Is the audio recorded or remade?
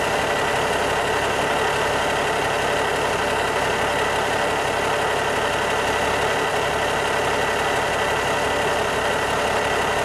recorded